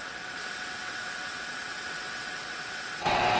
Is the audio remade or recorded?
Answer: remade